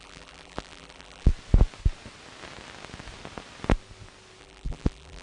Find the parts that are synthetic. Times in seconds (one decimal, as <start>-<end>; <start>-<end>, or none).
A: 0.0-1.3; 4.4-5.2